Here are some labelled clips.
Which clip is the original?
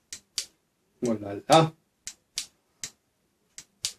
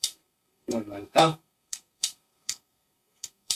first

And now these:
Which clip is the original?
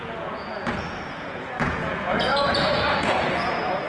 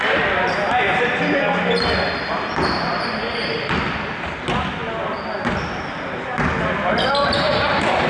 second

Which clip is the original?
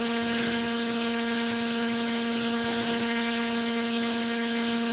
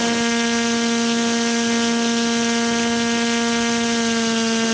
second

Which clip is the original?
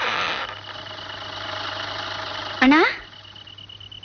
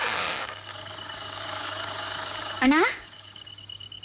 first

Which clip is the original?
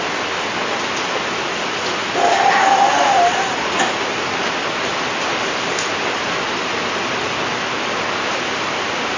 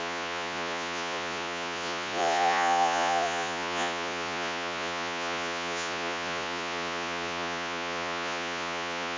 first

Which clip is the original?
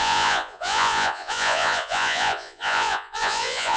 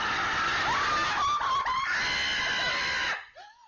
second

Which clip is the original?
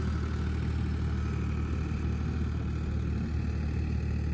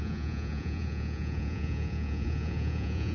first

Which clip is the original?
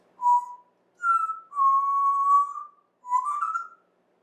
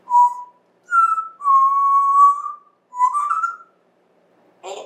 first